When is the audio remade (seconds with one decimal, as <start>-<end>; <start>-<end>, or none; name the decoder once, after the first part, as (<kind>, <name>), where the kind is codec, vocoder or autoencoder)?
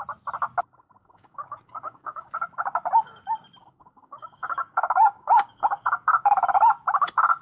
1.0-2.3 (codec, DAC); 3.6-6.3